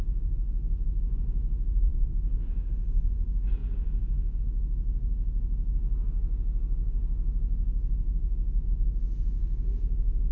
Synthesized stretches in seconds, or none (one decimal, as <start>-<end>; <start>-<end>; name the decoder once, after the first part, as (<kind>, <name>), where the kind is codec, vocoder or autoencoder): 1.9-2.7 (codec, DAC); 3.6-4.4